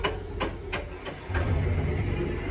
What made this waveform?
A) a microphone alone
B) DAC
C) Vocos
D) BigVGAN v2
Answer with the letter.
A